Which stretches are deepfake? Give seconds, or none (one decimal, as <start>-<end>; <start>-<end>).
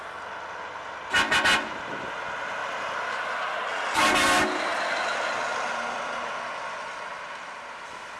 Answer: 2.6-3.1; 5.1-8.2